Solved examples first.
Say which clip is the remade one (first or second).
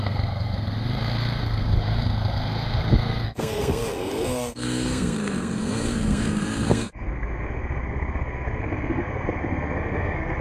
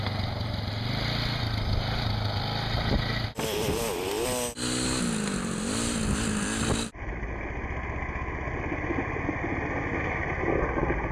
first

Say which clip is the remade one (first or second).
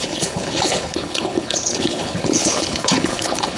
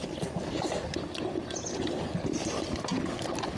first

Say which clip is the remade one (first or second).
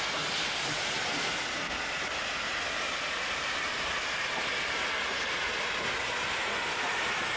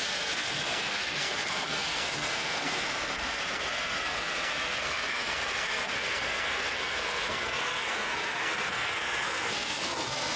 second